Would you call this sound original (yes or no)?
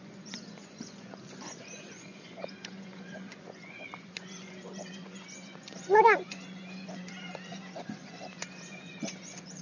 no